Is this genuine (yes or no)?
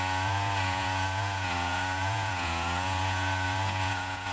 no